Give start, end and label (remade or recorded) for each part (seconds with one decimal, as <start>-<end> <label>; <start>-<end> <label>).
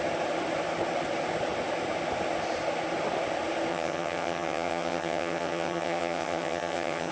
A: 0.0-3.7 recorded; 3.7-7.1 remade